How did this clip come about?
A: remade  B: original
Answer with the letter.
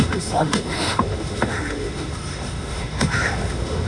A